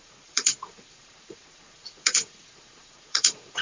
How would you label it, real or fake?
fake